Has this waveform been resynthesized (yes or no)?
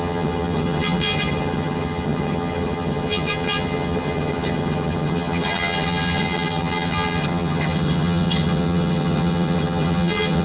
yes